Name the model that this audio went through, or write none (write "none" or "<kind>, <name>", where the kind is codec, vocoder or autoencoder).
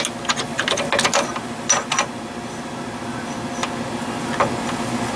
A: none